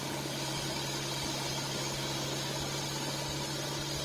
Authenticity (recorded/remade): recorded